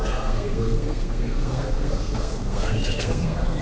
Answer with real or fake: fake